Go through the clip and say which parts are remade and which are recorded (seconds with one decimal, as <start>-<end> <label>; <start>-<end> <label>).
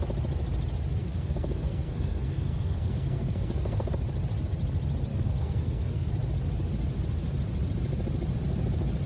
0.0-1.0 recorded; 1.0-3.9 remade; 3.9-5.1 recorded; 5.1-6.1 remade; 6.1-9.1 recorded